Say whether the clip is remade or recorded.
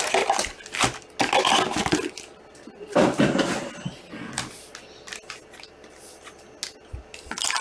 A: recorded